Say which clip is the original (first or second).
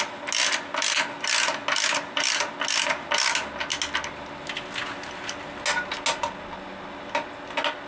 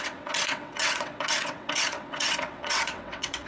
first